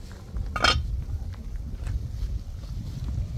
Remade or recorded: recorded